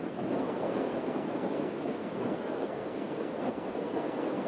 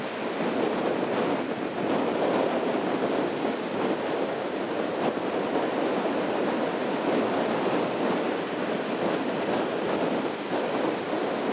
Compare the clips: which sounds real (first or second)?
second